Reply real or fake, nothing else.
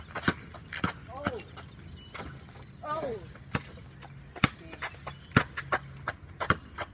real